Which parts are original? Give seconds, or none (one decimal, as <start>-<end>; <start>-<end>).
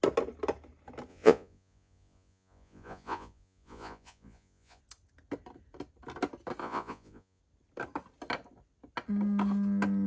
0.0-1.1; 4.8-6.6; 7.4-10.1